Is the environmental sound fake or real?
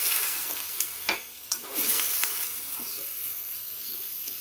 fake